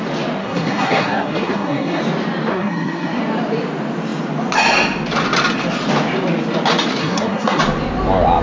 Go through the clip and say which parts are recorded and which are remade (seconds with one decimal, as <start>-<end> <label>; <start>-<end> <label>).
0.0-0.4 recorded; 0.4-2.0 remade; 2.0-2.5 recorded; 2.5-3.2 remade; 3.2-7.0 recorded; 7.0-7.6 remade; 7.6-8.4 recorded